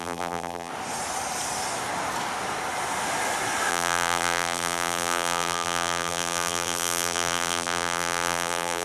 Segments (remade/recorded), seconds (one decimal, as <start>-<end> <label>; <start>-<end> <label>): 0.0-0.7 remade; 0.7-3.7 recorded; 3.7-8.8 remade